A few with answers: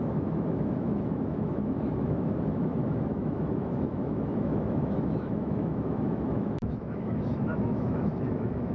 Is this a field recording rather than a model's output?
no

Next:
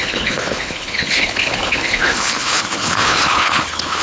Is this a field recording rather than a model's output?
no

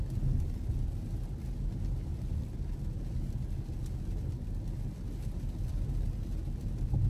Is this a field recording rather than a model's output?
yes